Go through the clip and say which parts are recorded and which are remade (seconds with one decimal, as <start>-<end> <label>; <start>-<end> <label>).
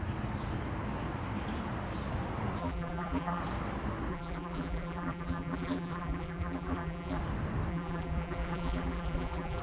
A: 0.0-2.6 recorded; 2.6-3.4 remade; 3.4-4.1 recorded; 4.1-7.2 remade; 7.2-7.7 recorded; 7.7-9.6 remade